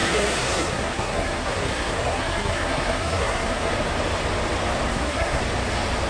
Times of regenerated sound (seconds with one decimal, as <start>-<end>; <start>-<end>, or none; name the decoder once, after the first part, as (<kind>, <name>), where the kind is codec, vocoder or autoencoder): 0.0-3.7 (codec, SNAC); 4.9-5.4